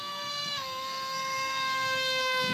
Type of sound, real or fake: fake